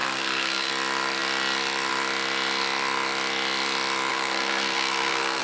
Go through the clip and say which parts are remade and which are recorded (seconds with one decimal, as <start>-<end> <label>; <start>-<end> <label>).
0.0-0.7 remade; 0.7-4.1 recorded; 4.1-5.4 remade